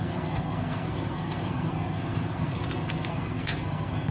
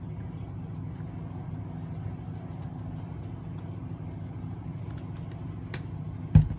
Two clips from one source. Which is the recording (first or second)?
second